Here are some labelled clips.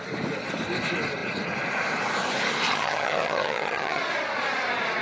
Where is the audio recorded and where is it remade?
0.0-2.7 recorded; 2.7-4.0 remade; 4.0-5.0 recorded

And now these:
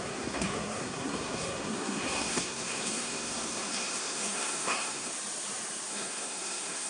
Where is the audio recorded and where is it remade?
0.0-5.1 remade; 5.1-5.9 recorded; 5.9-6.9 remade